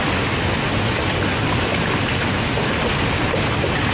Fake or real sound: real